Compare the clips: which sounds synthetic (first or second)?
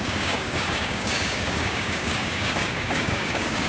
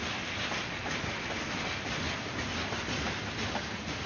first